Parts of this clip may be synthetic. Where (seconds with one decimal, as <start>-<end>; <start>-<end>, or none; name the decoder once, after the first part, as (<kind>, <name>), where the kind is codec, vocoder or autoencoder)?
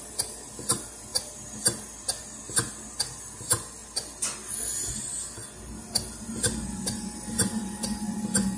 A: none